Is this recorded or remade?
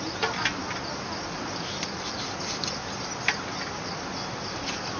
recorded